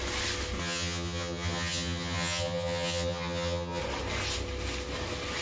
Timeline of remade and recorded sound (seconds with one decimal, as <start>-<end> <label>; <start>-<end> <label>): 0.0-0.6 recorded; 0.6-3.8 remade; 3.8-5.4 recorded